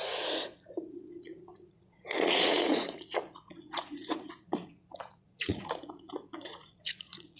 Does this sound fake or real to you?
fake